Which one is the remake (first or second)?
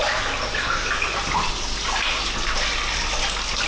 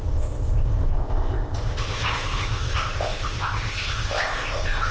second